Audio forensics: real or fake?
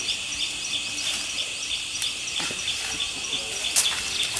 real